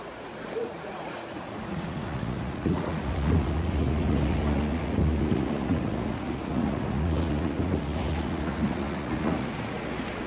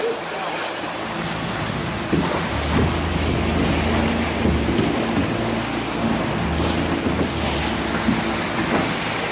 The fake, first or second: first